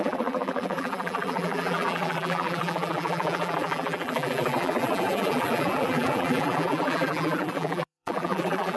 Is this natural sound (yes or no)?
no